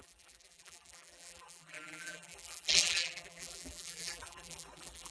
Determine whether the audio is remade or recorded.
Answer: remade